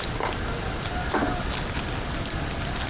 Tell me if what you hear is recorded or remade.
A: recorded